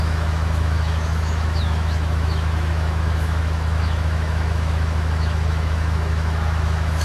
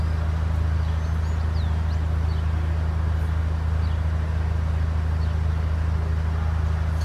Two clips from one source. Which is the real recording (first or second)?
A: second